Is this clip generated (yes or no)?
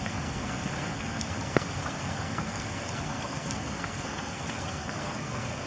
yes